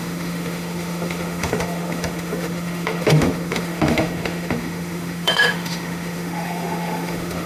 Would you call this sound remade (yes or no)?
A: yes